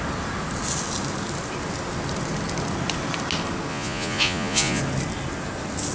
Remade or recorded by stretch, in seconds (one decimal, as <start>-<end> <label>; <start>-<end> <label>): 0.0-3.7 recorded; 3.7-4.8 remade; 4.8-5.9 recorded